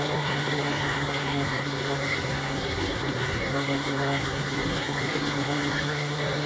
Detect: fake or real fake